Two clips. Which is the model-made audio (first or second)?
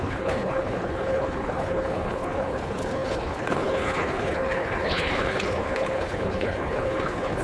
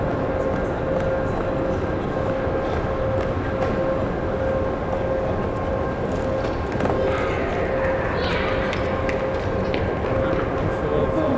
first